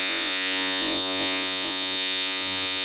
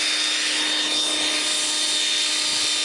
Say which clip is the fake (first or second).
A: first